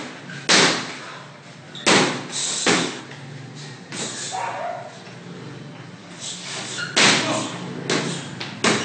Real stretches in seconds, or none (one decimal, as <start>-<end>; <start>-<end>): 0.0-2.4; 3.0-6.0; 6.8-8.8